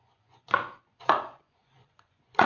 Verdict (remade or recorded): remade